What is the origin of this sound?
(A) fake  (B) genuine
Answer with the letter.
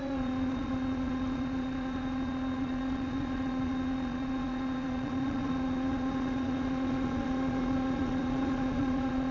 A